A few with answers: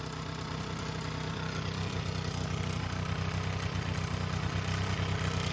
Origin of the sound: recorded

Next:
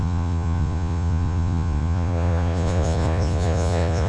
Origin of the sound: remade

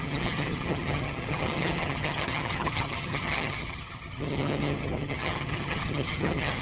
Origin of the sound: remade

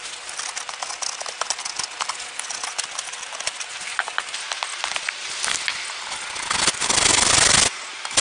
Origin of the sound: recorded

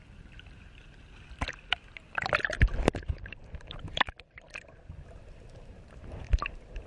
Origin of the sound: recorded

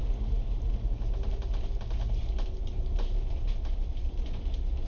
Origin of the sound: recorded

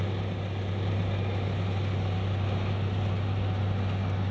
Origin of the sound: recorded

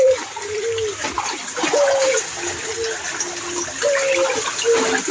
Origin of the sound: recorded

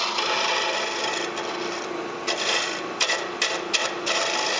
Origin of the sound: recorded